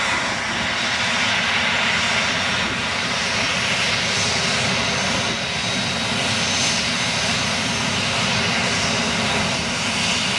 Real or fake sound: real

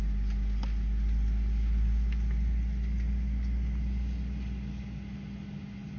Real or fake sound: real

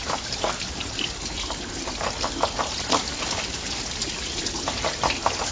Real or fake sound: real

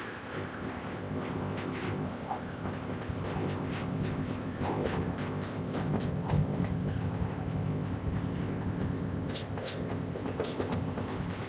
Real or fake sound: fake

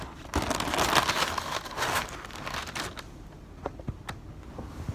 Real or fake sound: real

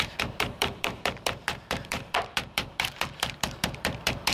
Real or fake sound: fake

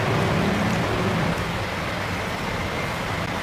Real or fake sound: real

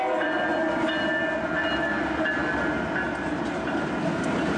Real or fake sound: real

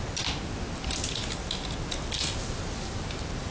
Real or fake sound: real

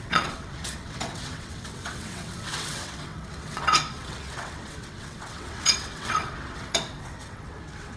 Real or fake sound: fake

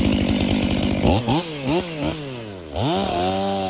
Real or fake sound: real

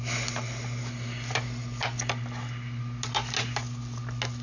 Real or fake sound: real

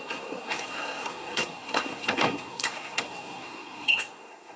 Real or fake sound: fake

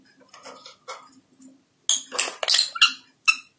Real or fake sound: real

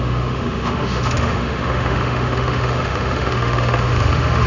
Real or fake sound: fake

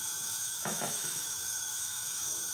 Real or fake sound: fake